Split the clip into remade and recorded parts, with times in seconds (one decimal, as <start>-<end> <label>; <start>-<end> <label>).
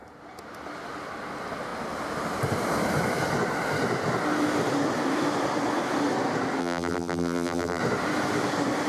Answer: 0.0-6.6 recorded; 6.6-7.8 remade; 7.8-8.9 recorded